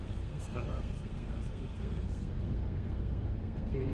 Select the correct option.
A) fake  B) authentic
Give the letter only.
A